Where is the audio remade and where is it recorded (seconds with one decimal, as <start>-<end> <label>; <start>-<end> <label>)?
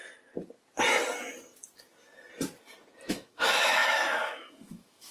0.0-3.1 recorded; 3.1-5.1 remade